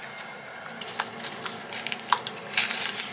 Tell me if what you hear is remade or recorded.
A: recorded